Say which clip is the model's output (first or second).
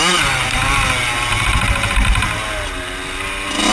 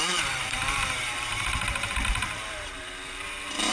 second